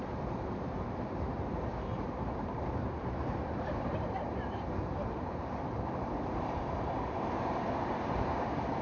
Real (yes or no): no